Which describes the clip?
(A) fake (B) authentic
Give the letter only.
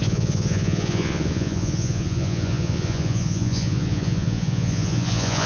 A